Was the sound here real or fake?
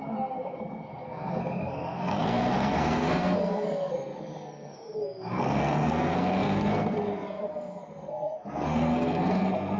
fake